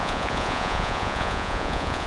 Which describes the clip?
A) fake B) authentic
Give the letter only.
A